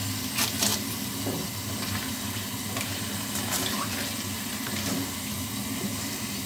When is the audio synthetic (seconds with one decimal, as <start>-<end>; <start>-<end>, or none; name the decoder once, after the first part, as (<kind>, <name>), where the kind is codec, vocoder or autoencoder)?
none